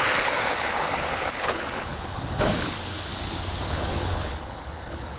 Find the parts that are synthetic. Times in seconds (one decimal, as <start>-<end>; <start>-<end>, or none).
0.0-3.1; 3.7-5.2

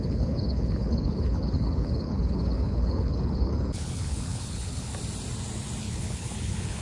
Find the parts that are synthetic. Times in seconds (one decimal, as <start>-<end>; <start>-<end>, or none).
0.0-4.9; 5.8-6.8

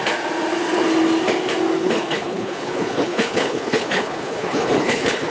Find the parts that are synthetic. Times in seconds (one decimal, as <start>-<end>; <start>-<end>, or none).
1.8-5.3

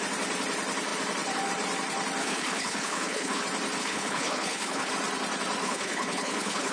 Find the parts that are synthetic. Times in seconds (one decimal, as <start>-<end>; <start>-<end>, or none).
2.2-3.4; 3.8-4.9; 5.6-6.7

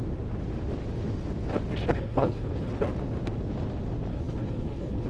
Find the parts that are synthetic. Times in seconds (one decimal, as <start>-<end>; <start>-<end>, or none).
1.9-2.7; 4.1-5.1

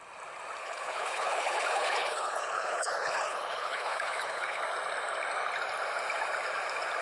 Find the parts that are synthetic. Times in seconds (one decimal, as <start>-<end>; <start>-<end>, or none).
0.6-4.6

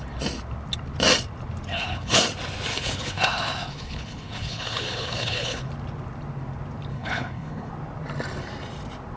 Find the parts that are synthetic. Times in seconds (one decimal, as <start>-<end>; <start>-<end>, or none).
1.7-2.2; 2.7-5.7; 6.9-7.7

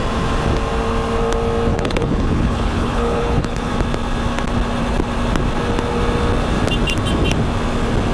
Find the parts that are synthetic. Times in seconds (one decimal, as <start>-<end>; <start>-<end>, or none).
1.7-3.7